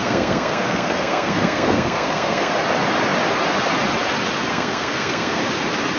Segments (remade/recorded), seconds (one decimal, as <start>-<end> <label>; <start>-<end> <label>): 0.0-2.5 remade; 2.5-4.5 recorded; 4.5-5.4 remade; 5.4-6.0 recorded